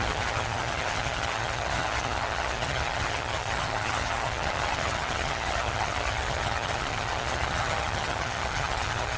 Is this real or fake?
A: fake